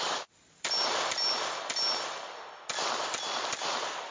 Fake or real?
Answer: real